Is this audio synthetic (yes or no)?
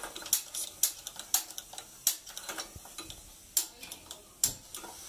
no